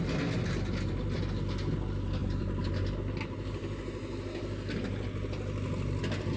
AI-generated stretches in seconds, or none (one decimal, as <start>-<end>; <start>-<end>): none